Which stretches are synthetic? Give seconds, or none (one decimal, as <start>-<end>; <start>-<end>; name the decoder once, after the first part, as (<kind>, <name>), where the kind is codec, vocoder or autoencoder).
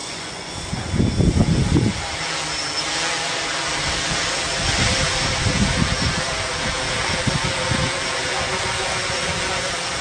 0.0-0.5 (vocoder, Vocos)